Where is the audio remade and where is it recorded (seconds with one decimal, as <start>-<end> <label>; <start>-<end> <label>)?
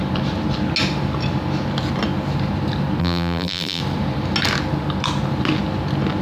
0.0-3.0 recorded; 3.0-3.8 remade; 3.8-6.2 recorded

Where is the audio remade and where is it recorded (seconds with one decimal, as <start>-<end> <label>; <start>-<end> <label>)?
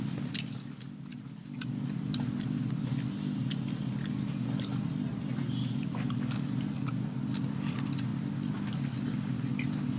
0.0-10.0 recorded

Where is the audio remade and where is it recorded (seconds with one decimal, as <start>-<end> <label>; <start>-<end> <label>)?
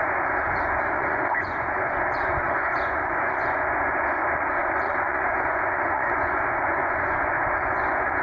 0.0-8.2 remade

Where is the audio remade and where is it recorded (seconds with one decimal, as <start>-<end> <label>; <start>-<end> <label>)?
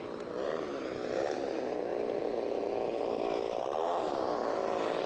0.0-5.1 recorded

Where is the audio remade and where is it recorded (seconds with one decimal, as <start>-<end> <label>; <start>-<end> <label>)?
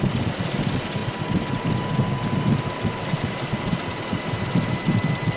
0.0-5.4 recorded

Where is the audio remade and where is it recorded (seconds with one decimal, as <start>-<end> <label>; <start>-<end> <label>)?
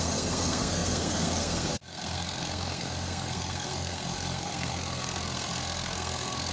0.0-6.5 remade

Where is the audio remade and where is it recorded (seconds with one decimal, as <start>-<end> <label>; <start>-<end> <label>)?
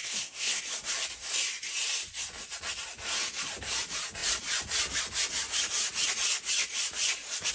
0.0-0.6 remade; 0.6-7.5 recorded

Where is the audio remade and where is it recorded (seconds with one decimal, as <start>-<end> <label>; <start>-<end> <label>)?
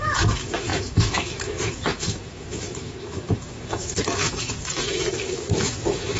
0.0-6.2 remade